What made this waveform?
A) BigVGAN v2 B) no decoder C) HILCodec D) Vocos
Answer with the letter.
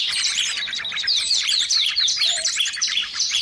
A